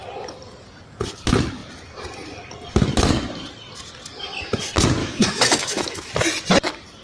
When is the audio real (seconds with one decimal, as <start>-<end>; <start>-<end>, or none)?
0.0-5.0; 6.1-7.0